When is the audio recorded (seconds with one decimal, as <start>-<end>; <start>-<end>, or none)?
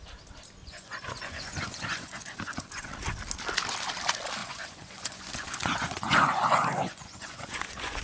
0.0-0.6; 2.9-4.4